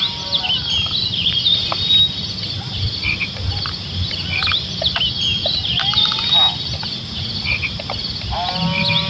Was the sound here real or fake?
real